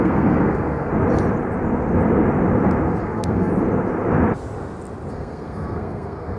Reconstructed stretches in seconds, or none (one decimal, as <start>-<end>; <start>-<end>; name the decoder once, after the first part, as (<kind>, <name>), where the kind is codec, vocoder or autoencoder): 0.0-0.9 (codec, SNAC); 3.0-3.5; 5.1-6.4

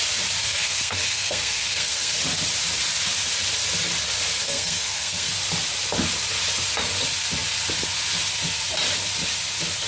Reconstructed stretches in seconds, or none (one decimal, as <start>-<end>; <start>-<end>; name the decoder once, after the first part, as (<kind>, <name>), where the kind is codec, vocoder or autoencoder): 0.4-2.2 (codec, SNAC); 4.4-5.3

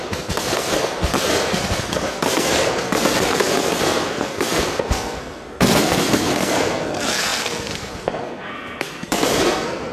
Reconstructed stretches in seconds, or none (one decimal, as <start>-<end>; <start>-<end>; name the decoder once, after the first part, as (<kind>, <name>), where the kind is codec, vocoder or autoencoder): 0.0-9.9 (codec, SNAC)

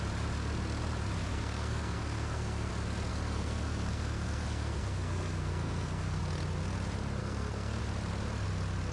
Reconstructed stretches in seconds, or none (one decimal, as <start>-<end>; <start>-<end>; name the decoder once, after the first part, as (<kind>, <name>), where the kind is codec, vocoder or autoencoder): 1.3-2.7 (codec, SNAC); 3.1-6.2; 7.2-7.8

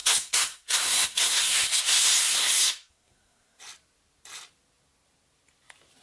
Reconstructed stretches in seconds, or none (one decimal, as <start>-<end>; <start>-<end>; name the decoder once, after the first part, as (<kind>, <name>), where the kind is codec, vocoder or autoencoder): 0.0-3.6 (codec, SNAC)

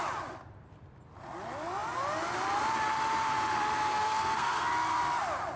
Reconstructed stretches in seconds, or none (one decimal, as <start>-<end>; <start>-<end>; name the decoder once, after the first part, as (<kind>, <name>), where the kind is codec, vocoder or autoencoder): 3.9-5.0 (codec, SNAC)

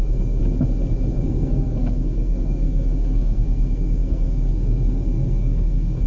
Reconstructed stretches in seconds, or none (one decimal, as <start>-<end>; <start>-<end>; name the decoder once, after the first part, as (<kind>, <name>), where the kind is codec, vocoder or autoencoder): 0.0-0.4 (codec, SNAC); 1.1-6.1